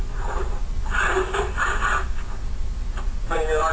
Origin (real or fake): real